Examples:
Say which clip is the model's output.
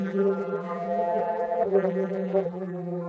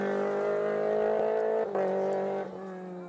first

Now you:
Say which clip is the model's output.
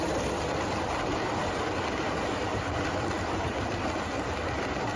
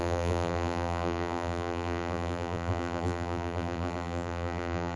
second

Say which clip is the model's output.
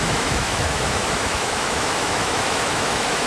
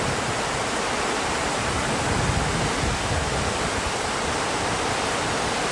first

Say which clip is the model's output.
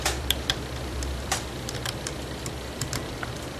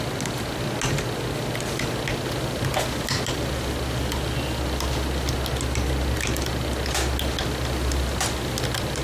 first